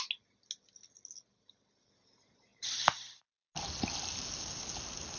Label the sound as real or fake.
real